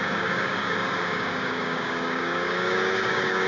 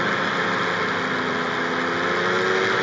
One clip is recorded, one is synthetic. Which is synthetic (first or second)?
first